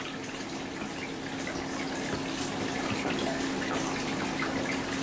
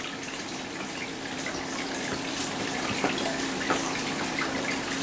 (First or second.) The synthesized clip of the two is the second